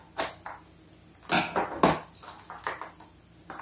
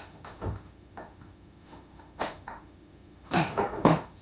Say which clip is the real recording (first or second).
first